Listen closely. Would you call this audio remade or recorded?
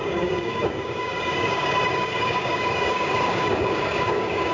remade